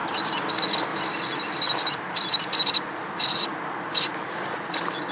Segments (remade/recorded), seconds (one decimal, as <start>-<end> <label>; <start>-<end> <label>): 0.0-5.1 recorded